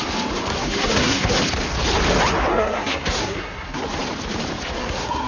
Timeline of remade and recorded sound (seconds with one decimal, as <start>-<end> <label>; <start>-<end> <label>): 0.0-0.5 recorded; 0.5-1.4 remade; 1.4-2.5 recorded; 2.5-3.8 remade; 3.8-4.8 recorded; 4.8-5.3 remade